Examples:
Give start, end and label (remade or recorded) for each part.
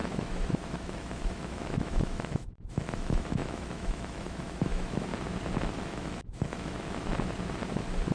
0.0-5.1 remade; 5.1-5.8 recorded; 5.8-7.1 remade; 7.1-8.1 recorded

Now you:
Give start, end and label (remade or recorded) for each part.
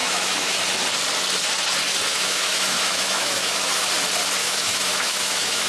0.0-0.6 remade; 0.6-2.1 recorded; 2.1-3.9 remade; 3.9-4.4 recorded; 4.4-5.7 remade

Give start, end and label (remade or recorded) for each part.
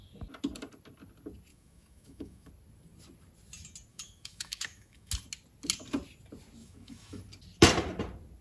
0.0-1.5 recorded; 1.5-2.5 remade; 2.5-3.9 recorded; 3.9-5.1 remade; 5.1-6.6 recorded; 6.6-7.2 remade; 7.2-8.4 recorded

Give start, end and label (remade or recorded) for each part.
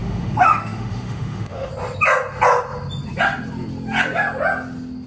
0.0-1.7 remade; 1.7-5.1 recorded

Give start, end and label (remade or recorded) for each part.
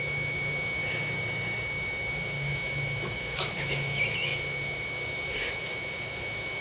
0.0-0.8 remade; 0.8-2.1 recorded; 2.1-6.6 remade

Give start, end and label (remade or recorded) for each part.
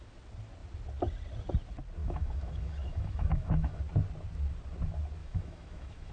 0.0-2.0 recorded; 2.0-3.8 remade; 3.8-5.2 recorded; 5.2-6.1 remade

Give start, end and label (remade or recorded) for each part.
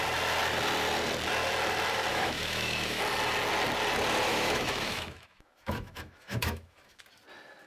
0.0-2.1 recorded; 2.1-3.0 remade; 3.0-4.3 recorded; 4.3-7.0 remade; 7.0-7.7 recorded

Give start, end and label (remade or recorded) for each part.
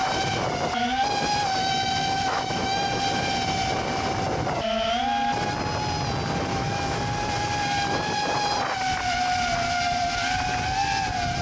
0.0-1.6 recorded; 1.6-3.0 remade; 3.0-6.5 recorded; 6.5-7.0 remade; 7.0-11.4 recorded